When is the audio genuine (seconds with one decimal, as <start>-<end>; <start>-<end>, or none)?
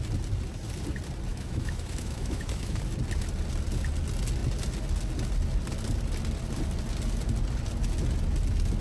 0.0-1.3; 2.8-8.8